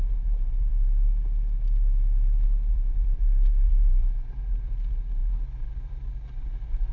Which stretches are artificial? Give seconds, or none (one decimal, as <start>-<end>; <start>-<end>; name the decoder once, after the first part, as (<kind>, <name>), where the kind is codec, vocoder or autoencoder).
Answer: 0.0-0.7 (vocoder, BigVGAN v2); 2.7-6.9